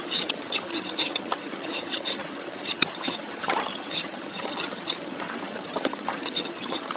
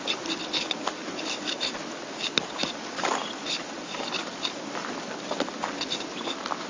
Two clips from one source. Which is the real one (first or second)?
second